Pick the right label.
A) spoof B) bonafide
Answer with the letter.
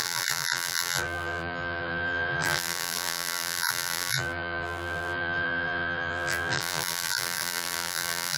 A